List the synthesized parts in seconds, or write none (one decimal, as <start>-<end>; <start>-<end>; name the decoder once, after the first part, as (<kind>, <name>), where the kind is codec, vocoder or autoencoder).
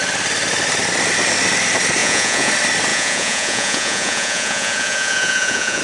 2.0-2.5 (vocoder, Vocos); 2.9-5.8